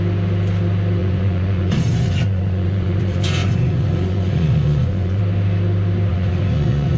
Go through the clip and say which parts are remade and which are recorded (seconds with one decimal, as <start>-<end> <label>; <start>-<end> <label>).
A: 0.0-1.0 recorded; 1.0-5.2 remade; 5.2-6.1 recorded; 6.1-7.0 remade